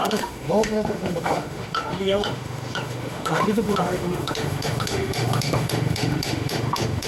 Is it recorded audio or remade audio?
remade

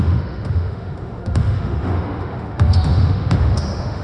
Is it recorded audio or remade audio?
remade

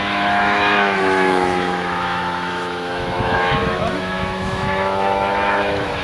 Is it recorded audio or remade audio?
remade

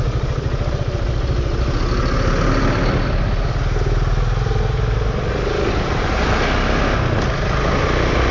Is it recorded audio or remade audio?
recorded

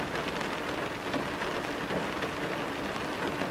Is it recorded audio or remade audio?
recorded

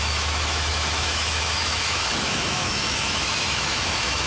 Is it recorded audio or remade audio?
remade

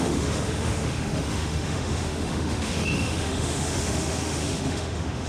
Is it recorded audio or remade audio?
remade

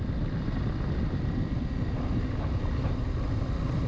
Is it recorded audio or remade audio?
recorded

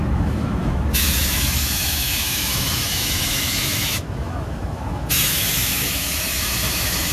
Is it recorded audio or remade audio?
remade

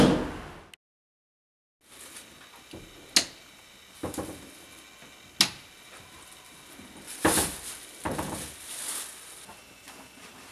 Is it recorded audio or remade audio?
recorded